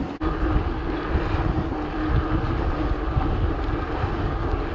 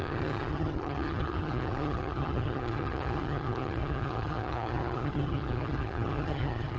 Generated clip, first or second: second